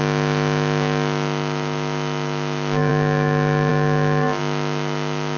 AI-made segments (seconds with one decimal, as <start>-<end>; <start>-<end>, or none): none